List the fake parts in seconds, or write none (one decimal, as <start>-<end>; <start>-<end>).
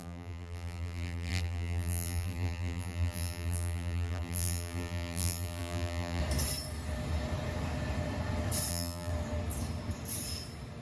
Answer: 0.0-6.2; 8.7-9.1